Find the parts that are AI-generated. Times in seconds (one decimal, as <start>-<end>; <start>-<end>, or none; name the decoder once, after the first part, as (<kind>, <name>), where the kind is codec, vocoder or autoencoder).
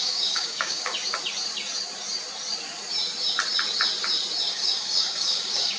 0.0-0.9 (codec, DAC); 4.4-5.8